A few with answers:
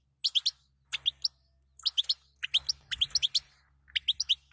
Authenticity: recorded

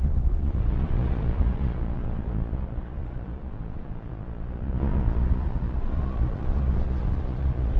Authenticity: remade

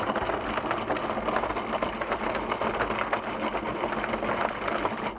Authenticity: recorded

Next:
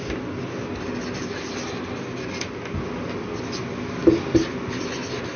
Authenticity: recorded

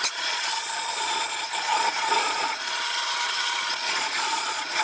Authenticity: remade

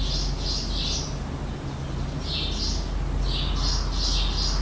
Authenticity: recorded